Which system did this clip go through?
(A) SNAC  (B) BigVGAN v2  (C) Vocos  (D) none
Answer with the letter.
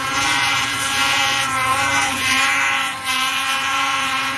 C